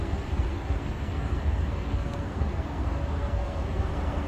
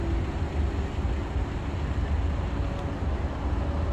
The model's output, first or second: first